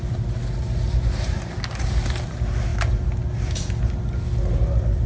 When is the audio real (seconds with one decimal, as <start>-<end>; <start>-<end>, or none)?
0.0-5.1